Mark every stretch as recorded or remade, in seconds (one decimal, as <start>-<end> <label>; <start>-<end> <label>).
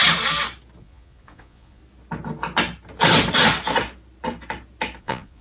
0.0-0.8 recorded; 0.8-1.8 remade; 1.8-5.0 recorded; 5.0-5.4 remade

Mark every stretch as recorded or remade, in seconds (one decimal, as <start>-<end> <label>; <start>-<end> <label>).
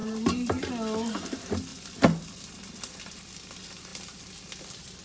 0.0-0.7 remade; 0.7-5.0 recorded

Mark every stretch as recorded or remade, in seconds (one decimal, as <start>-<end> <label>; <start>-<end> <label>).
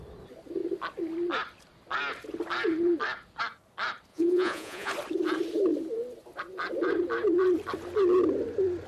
0.0-4.1 recorded; 4.1-4.9 remade; 4.9-8.9 recorded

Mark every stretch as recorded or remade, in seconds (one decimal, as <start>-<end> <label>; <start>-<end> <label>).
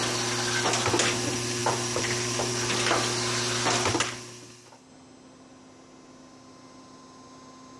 0.0-1.6 recorded; 1.6-2.5 remade; 2.5-7.8 recorded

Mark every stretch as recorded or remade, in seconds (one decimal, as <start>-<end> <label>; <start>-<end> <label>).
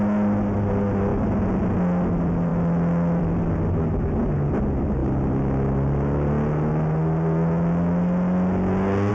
0.0-9.1 recorded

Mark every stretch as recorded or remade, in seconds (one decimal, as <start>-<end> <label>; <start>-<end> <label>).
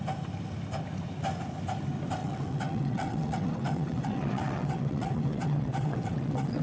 0.0-2.2 recorded; 2.2-6.6 remade